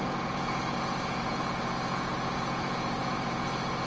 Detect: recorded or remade remade